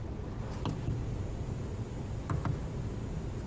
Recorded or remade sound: recorded